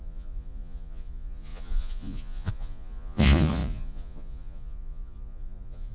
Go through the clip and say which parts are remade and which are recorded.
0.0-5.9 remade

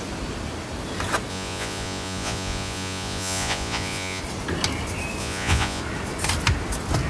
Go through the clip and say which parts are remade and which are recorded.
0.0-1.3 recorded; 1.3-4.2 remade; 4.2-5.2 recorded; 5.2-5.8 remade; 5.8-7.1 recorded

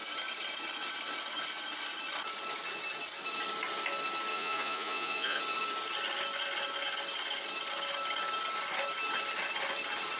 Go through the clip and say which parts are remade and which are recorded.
0.0-4.3 recorded; 4.3-5.4 remade; 5.4-10.2 recorded

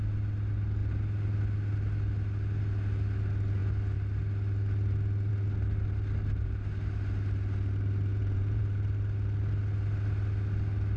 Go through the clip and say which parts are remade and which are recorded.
0.0-8.1 recorded; 8.1-8.6 remade; 8.6-11.0 recorded

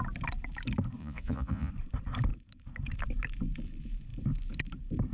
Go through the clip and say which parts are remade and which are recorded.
0.0-1.0 recorded; 1.0-1.7 remade; 1.7-5.1 recorded

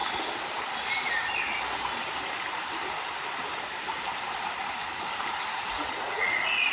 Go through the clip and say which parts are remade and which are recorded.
0.0-5.6 recorded; 5.6-6.7 remade

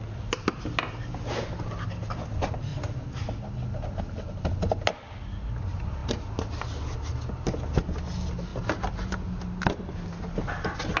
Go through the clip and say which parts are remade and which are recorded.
0.0-11.0 recorded

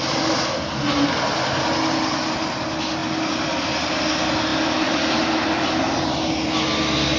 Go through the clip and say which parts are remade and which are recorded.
0.0-7.2 recorded